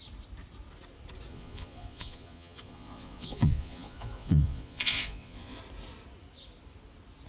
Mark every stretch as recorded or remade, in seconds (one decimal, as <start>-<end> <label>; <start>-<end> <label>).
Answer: 0.0-1.3 recorded; 1.3-5.6 remade; 5.6-7.3 recorded